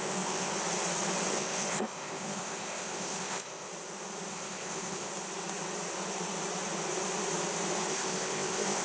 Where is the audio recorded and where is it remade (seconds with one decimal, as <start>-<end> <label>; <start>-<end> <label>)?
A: 0.0-0.5 remade; 0.5-1.3 recorded; 1.3-3.7 remade; 3.7-4.3 recorded; 4.3-5.1 remade; 5.1-7.9 recorded; 7.9-8.8 remade